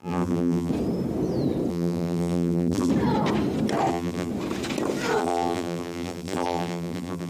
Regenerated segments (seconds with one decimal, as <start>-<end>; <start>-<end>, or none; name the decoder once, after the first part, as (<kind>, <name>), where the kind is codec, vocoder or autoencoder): 0.0-0.7 (vocoder, BigVGAN v2); 1.7-2.9; 3.9-4.3; 5.2-7.3